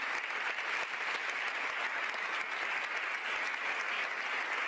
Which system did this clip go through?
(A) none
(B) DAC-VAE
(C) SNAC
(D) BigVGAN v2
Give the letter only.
A